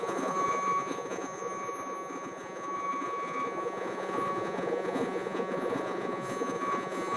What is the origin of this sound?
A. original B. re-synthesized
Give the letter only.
B